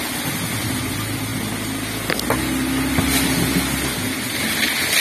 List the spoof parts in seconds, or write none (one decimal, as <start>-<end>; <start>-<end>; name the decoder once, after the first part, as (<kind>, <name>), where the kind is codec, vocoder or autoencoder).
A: none